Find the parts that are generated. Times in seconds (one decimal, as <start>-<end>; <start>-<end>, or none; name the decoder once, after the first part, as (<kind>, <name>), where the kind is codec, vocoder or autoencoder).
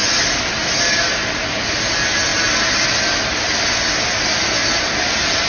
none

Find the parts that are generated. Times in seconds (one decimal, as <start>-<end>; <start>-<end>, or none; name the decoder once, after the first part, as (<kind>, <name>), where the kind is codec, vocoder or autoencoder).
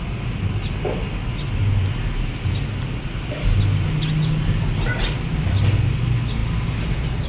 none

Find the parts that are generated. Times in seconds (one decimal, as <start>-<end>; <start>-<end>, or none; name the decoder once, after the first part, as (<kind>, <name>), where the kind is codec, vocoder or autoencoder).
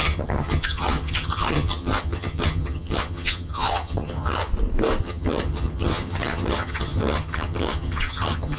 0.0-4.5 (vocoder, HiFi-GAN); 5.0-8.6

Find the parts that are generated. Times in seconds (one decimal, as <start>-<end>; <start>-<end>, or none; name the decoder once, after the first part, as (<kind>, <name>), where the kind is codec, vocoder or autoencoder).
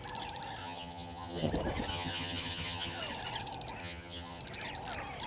0.6-1.5 (vocoder, HiFi-GAN); 1.9-3.0; 3.8-4.4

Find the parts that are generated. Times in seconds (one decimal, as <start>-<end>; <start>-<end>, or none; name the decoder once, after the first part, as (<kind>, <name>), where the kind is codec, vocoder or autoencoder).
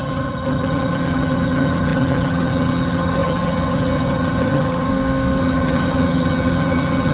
0.0-4.9 (vocoder, HiFi-GAN); 5.4-7.1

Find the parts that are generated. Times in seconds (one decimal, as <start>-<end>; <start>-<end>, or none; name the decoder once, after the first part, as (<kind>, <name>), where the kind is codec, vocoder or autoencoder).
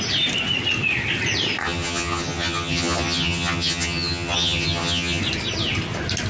1.6-5.2 (vocoder, HiFi-GAN)